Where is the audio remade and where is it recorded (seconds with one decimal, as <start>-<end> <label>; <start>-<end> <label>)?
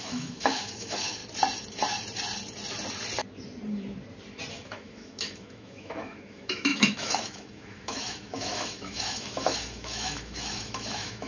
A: 0.0-1.2 remade; 1.2-4.5 recorded; 4.5-11.3 remade